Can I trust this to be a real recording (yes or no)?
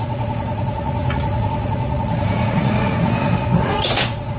no